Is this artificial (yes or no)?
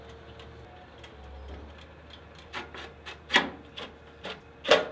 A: no